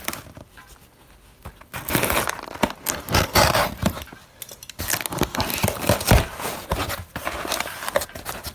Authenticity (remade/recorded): recorded